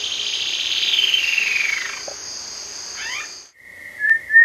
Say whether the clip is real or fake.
real